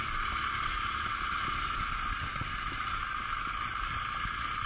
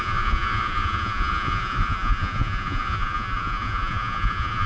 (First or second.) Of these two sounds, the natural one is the first